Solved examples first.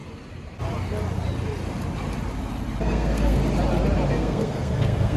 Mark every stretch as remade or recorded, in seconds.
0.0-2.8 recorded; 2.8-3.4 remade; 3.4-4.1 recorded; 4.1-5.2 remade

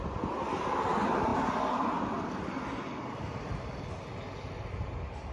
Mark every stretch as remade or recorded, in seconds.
0.0-5.3 recorded

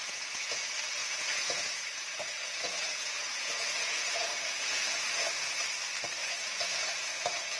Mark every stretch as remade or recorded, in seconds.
0.0-0.6 remade; 0.6-1.0 recorded; 1.0-5.6 remade; 5.6-6.2 recorded; 6.2-7.6 remade

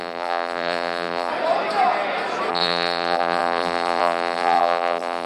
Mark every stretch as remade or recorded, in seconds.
0.0-1.3 remade; 1.3-2.5 recorded; 2.5-5.3 remade

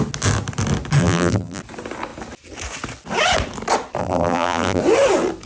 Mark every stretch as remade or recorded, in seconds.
0.0-1.0 recorded; 1.0-1.6 remade; 1.6-4.0 recorded; 4.0-4.8 remade; 4.8-5.5 recorded

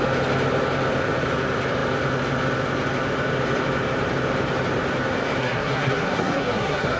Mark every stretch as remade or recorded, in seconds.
0.0-5.4 recorded; 5.4-7.0 remade

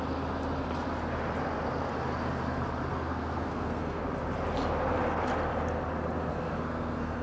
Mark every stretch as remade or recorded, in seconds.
0.0-2.9 recorded; 2.9-4.0 remade; 4.0-6.3 recorded; 6.3-7.2 remade